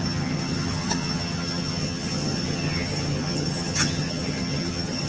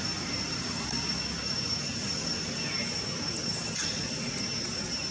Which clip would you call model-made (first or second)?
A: first